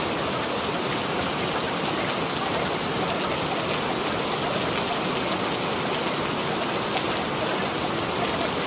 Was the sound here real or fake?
real